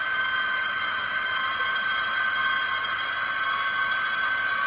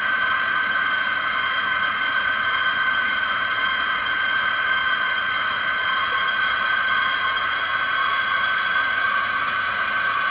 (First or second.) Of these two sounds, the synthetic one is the second